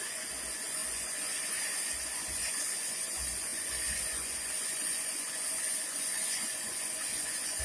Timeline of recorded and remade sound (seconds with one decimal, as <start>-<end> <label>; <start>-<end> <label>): 0.0-7.6 remade